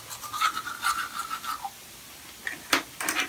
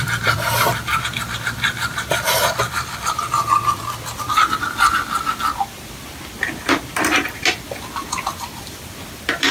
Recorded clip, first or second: first